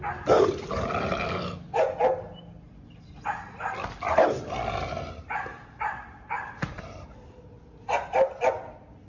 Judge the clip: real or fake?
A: real